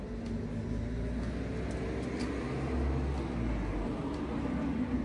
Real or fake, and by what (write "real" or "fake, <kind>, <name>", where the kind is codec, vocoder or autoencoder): real